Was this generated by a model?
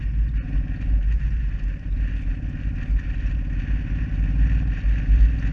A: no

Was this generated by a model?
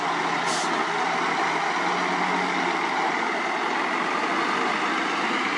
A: no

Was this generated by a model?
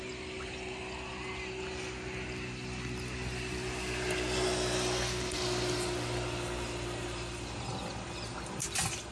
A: no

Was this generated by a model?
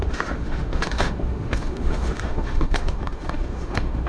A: yes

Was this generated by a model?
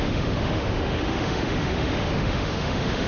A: yes